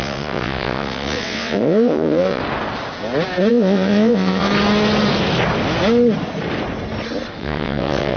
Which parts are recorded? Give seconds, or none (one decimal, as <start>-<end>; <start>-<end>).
2.4-3.5; 4.5-7.4